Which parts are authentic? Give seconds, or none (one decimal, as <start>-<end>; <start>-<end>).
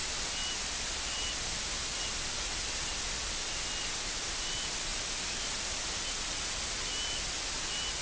0.0-4.9; 7.0-8.0